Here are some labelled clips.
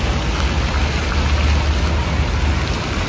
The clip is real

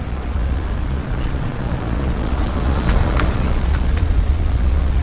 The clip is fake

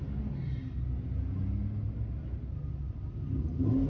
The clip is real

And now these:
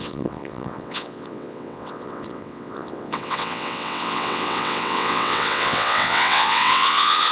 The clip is fake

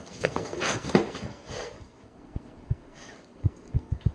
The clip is fake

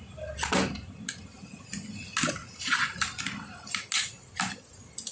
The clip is real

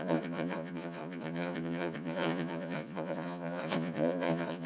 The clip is fake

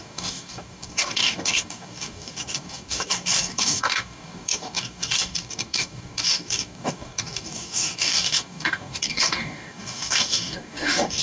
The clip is fake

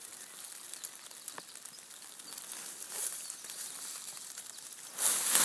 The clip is real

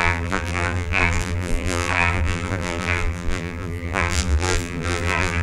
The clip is fake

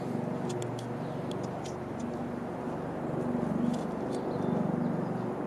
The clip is real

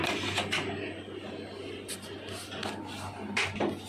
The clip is real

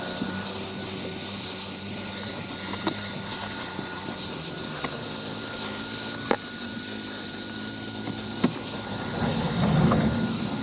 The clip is real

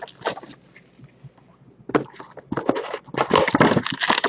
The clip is real